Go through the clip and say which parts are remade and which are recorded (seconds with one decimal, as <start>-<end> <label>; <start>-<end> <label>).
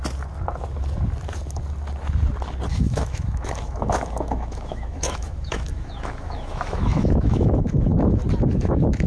0.0-2.7 recorded; 2.7-7.9 remade; 7.9-8.5 recorded; 8.5-9.1 remade